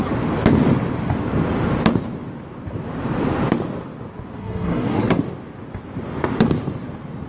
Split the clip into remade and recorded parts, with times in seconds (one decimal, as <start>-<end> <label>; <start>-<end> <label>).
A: 0.0-4.4 recorded; 4.4-5.2 remade; 5.2-7.3 recorded

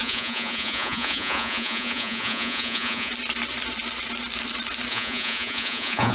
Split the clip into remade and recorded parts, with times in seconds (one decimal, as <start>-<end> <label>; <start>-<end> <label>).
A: 0.0-3.1 remade; 3.1-4.9 recorded; 4.9-6.1 remade